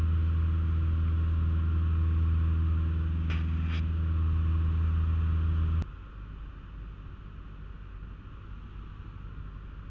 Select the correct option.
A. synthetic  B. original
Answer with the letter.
B